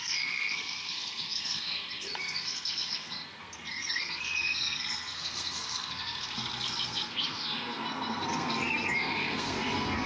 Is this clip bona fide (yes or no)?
no